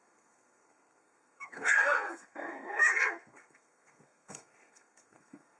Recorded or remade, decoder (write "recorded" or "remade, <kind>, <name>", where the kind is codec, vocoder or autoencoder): remade, codec, SNAC